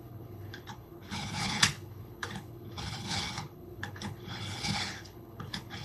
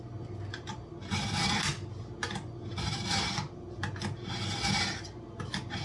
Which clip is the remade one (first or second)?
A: first